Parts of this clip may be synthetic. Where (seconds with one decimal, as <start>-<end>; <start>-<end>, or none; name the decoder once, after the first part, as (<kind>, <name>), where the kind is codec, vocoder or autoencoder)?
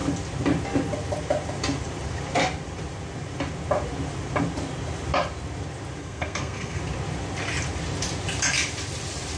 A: 6.0-6.8 (codec, SNAC)